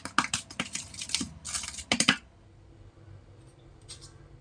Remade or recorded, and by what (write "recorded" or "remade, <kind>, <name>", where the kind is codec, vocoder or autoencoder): recorded